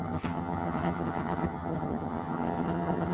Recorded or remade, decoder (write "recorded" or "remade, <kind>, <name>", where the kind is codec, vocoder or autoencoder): remade, vocoder, HiFi-GAN